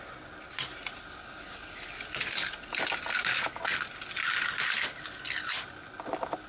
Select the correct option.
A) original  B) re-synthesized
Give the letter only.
A